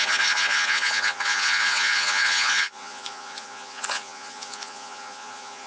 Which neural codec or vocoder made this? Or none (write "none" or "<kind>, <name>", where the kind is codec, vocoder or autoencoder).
vocoder, Vocos